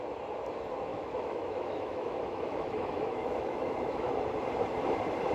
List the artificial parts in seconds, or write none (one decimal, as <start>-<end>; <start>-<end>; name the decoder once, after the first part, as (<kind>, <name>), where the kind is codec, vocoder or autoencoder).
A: 0.9-4.1 (autoencoder, DAC-VAE)